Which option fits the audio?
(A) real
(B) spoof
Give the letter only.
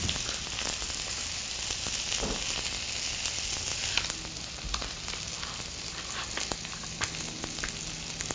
A